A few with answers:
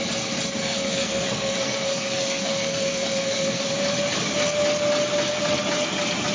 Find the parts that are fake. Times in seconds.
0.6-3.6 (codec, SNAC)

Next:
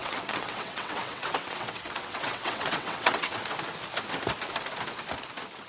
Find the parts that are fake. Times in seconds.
0.0-3.4 (vocoder, WaveNeXt)

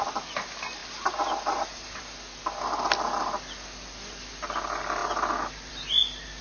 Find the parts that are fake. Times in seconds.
none